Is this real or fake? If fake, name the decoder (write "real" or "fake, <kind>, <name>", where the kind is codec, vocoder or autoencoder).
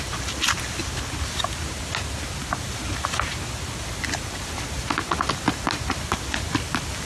real